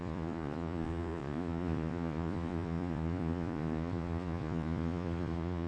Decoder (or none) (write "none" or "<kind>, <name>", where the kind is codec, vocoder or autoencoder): vocoder, Vocos